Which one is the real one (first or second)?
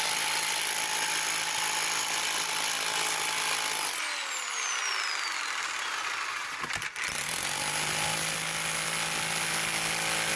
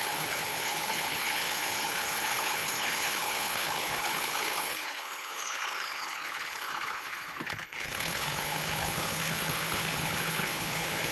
first